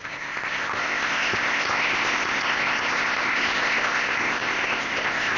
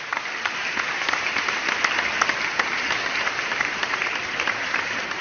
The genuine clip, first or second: second